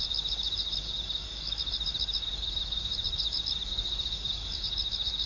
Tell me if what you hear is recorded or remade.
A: remade